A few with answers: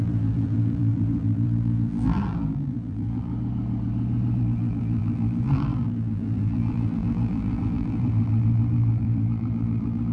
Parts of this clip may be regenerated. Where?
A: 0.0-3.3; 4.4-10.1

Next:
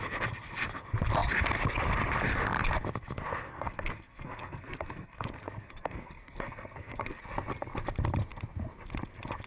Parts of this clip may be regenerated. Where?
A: 3.5-7.2

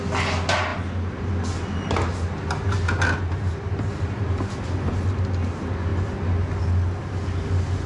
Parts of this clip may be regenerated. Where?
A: none

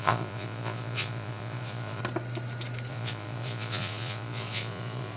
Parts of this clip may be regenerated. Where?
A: 0.0-2.0; 2.9-5.2

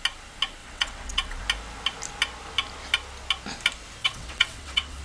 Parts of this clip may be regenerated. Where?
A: 0.6-1.4; 4.0-5.0

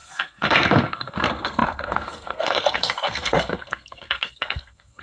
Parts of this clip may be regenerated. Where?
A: 0.0-5.0